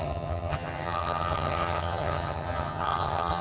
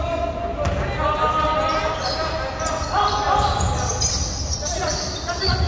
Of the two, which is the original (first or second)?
second